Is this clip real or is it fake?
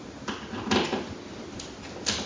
real